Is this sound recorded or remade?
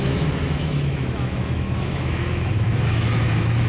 remade